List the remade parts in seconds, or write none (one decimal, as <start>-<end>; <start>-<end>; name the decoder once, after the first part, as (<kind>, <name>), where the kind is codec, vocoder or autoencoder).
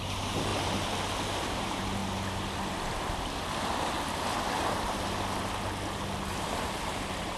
0.0-0.5 (vocoder, BigVGAN v2); 1.5-2.0; 6.4-7.4